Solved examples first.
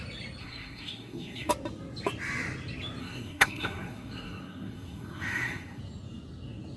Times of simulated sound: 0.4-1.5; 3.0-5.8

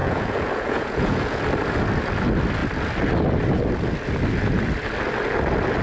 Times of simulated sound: 0.0-1.4

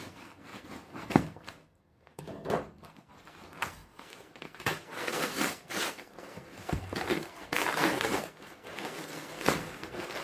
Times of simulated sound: 0.0-10.2

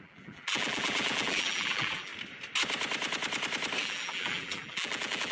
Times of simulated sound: 0.0-2.1; 3.8-5.3

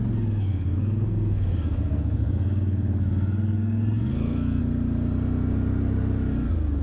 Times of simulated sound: 0.5-4.6